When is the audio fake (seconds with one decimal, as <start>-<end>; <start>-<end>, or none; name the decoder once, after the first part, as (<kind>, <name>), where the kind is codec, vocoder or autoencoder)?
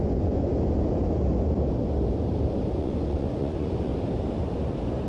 0.0-0.5 (vocoder, Vocos); 2.8-3.9